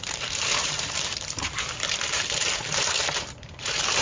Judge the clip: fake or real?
fake